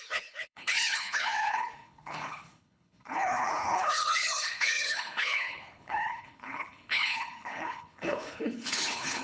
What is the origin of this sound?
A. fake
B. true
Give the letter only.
A